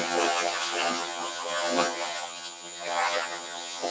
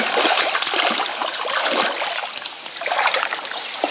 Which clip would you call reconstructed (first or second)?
first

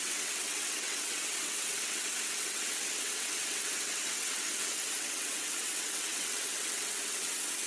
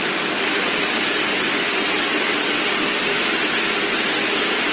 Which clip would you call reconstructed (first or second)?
first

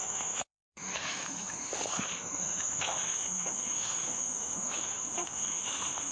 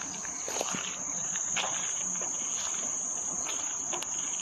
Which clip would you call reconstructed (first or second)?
first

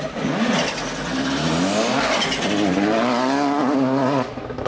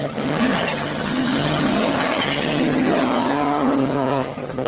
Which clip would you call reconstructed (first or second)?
second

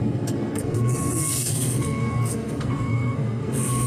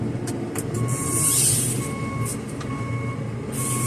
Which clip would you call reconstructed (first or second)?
first